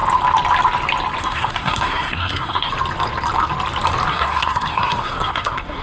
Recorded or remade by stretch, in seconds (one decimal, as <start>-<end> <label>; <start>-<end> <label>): 0.0-1.2 recorded; 1.2-2.7 remade; 2.7-4.1 recorded; 4.1-5.8 remade